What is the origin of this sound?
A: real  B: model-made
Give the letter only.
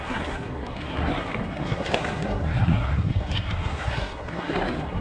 B